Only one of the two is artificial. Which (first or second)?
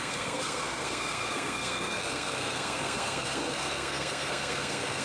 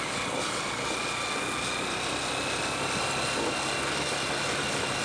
first